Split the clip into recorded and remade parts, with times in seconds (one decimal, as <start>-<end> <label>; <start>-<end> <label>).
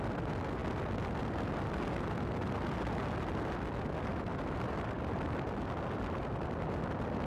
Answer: 0.0-7.3 recorded